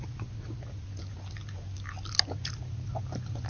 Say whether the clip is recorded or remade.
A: recorded